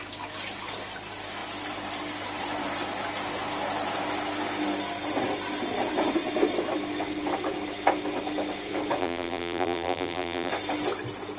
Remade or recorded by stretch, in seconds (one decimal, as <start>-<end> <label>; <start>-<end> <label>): 0.0-9.0 recorded; 9.0-10.5 remade; 10.5-11.4 recorded